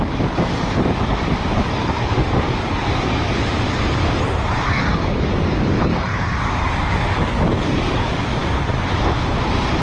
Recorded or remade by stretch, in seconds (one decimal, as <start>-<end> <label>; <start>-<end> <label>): 0.0-3.4 remade; 3.4-4.7 recorded; 4.7-8.4 remade; 8.4-9.8 recorded